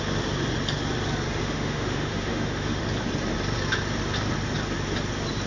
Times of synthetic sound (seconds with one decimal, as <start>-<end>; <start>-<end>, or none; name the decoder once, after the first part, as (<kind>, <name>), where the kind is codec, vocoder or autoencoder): 1.4-2.8 (autoencoder, DAC-VAE)